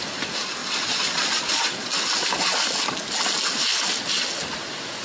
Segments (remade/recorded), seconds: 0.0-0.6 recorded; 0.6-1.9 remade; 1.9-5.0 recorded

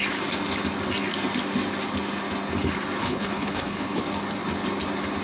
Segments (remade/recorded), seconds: 0.0-3.0 recorded; 3.0-4.0 remade; 4.0-5.2 recorded

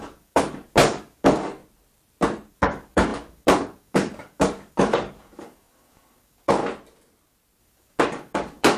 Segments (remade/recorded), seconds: 0.0-1.6 remade; 1.6-2.5 recorded; 2.5-6.6 remade; 6.6-7.6 recorded; 7.6-8.8 remade

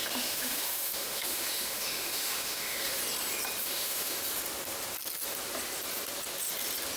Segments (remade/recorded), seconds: 0.0-3.0 remade; 3.0-3.6 recorded; 3.6-4.2 remade; 4.2-7.0 recorded